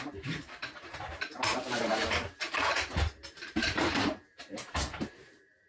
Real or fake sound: fake